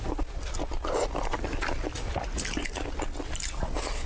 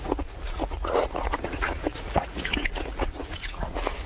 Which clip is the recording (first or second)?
first